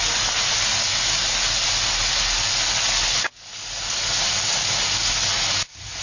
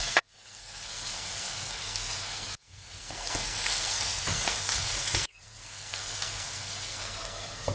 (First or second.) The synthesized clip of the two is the second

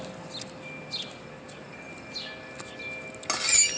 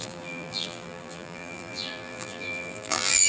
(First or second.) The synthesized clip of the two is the second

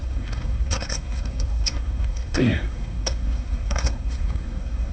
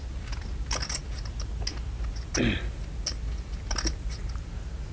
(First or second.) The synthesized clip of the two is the first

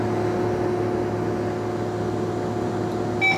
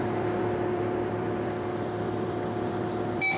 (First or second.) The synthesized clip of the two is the second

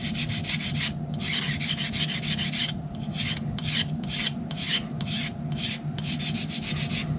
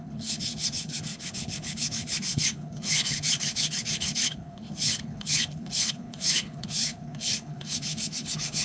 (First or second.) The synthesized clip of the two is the second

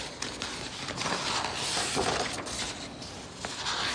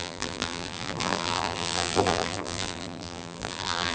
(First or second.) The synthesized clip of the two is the second